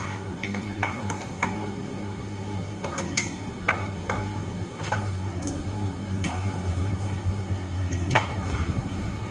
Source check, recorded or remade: remade